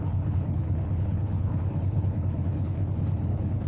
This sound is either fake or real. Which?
fake